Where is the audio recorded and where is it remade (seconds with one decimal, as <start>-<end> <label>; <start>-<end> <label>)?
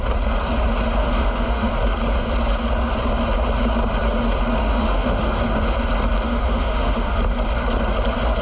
0.0-1.0 recorded; 1.0-1.7 remade; 1.7-4.6 recorded; 4.6-5.4 remade; 5.4-6.3 recorded; 6.3-7.2 remade; 7.2-8.4 recorded